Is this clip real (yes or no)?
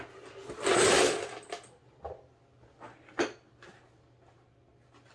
yes